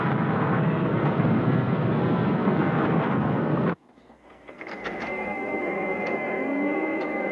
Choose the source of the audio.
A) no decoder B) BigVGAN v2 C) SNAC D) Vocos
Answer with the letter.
C